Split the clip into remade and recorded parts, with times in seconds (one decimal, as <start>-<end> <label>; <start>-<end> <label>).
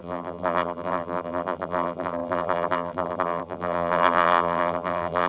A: 0.0-5.3 remade